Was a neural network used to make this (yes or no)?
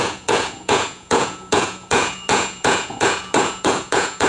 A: yes